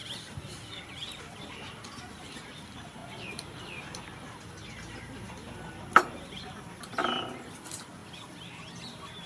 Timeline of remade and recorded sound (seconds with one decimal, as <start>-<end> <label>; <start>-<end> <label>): 0.0-3.0 remade; 3.0-5.3 recorded; 5.3-9.3 remade

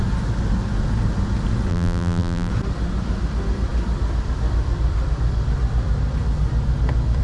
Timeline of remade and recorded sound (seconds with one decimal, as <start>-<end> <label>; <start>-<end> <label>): 0.0-1.7 recorded; 1.7-2.5 remade; 2.5-7.2 recorded

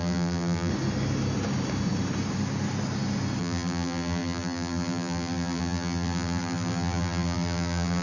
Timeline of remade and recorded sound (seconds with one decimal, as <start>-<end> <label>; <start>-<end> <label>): 0.0-0.7 remade; 0.7-3.4 recorded; 3.4-8.0 remade

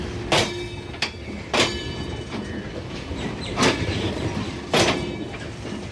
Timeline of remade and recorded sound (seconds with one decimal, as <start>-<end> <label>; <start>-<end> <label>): 0.0-3.1 recorded; 3.1-4.2 remade; 4.2-5.9 recorded

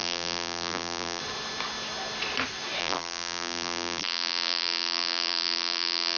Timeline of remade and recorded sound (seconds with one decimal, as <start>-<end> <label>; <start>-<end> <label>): 0.0-1.2 remade; 1.2-2.8 recorded; 2.8-6.2 remade

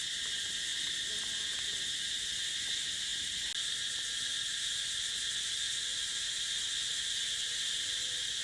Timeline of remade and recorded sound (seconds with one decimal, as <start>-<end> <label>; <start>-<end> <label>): 0.0-8.4 recorded